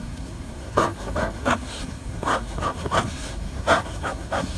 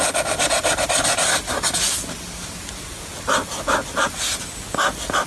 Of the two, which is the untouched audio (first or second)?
second